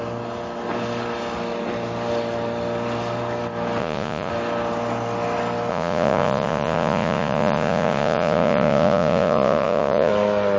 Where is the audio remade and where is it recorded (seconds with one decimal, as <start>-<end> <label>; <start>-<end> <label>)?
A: 0.0-3.8 recorded; 3.8-4.3 remade; 4.3-5.7 recorded; 5.7-10.1 remade; 10.1-10.6 recorded